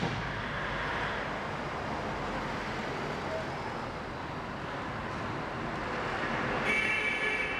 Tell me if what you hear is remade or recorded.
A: recorded